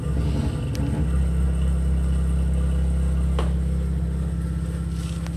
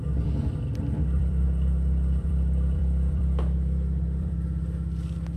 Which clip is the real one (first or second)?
first